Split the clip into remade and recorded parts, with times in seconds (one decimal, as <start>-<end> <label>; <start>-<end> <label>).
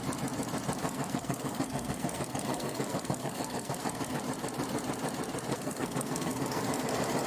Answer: 0.0-0.8 recorded; 0.8-4.2 remade; 4.2-5.5 recorded; 5.5-6.6 remade; 6.6-7.3 recorded